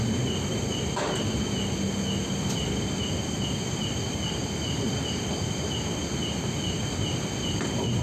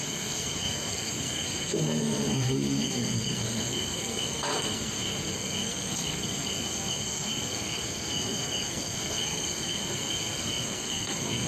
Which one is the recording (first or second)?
first